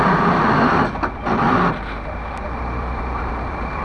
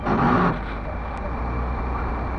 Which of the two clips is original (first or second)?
second